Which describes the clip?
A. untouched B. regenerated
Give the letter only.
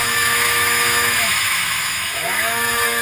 B